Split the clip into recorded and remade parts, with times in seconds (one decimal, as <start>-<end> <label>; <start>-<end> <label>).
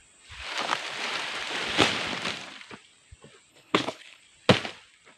0.0-3.5 recorded; 3.5-4.2 remade; 4.2-5.2 recorded